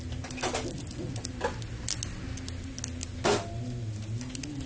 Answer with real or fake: real